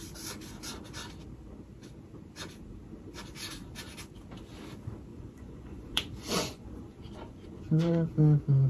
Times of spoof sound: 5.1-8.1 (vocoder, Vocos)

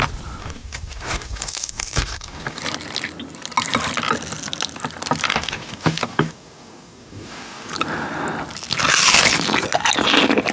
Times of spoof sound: 0.4-2.6 (codec, DAC); 5.3-7.7

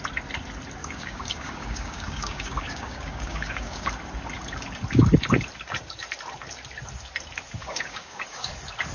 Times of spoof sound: 0.8-3.9 (codec, DAC); 7.6-8.5

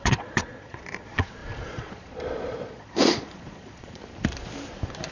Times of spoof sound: 0.0-4.0 (vocoder, Vocos)

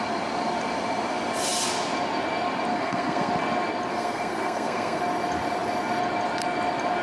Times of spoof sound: 2.7-3.3 (codec, SNAC); 3.9-5.0